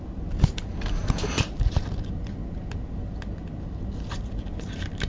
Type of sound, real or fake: real